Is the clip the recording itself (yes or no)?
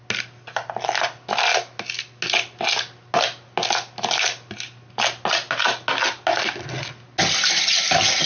yes